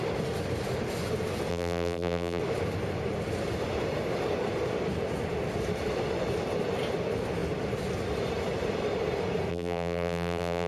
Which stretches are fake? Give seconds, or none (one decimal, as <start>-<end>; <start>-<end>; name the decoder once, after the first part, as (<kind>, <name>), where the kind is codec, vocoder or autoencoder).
1.5-2.4 (vocoder, BigVGAN v2); 9.5-10.7